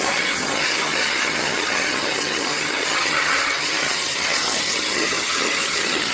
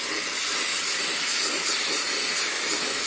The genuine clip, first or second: second